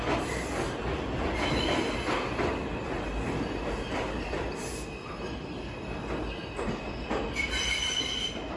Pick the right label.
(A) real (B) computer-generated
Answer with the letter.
A